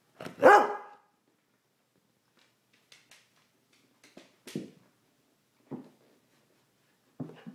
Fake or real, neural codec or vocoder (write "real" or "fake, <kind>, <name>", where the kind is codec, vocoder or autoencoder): real